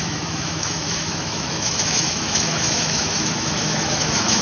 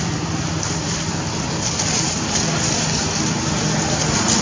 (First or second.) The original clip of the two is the second